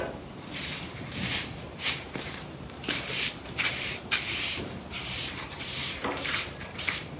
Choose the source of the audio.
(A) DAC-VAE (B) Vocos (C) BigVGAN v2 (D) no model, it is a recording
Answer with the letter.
C